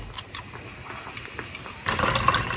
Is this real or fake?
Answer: real